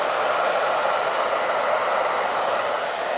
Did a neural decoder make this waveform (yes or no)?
no